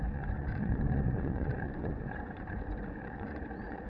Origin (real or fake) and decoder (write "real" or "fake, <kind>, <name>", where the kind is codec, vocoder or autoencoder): fake, vocoder, Vocos